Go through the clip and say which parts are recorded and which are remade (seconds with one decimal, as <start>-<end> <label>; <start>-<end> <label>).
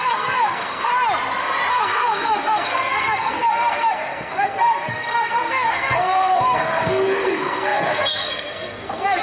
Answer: 0.0-0.9 remade; 0.9-1.7 recorded; 1.7-9.2 remade